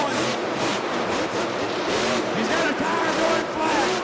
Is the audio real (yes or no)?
no